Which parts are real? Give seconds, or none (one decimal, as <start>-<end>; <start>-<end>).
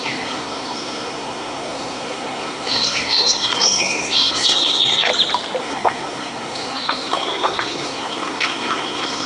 5.1-5.6